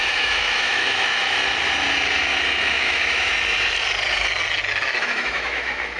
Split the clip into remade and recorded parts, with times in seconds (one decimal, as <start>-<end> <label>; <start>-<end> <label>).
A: 0.0-1.4 remade; 1.4-2.6 recorded; 2.6-3.3 remade; 3.3-5.0 recorded; 5.0-6.0 remade